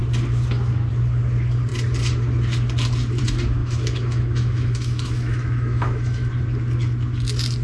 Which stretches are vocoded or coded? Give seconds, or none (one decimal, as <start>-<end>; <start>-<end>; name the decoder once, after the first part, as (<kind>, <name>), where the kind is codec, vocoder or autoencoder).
3.6-6.3 (autoencoder, DAC-VAE)